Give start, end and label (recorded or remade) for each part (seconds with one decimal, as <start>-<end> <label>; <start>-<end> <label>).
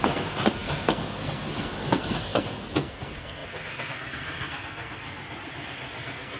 0.0-5.2 remade; 5.2-6.0 recorded; 6.0-6.4 remade